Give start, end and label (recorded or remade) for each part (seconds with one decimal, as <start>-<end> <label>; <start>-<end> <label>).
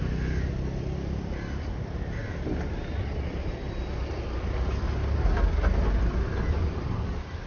0.0-7.5 recorded